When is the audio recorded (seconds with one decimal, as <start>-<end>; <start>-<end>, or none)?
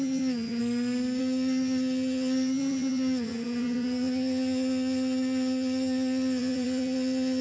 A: 0.6-1.2